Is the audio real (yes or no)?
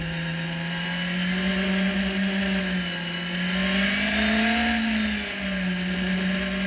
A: yes